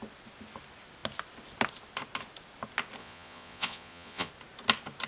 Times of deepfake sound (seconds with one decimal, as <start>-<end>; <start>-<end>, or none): 3.0-4.3